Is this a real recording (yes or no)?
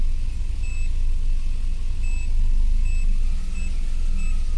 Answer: yes